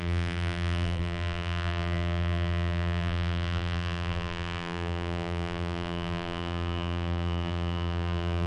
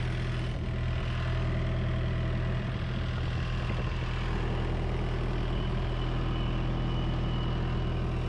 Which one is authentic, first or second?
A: second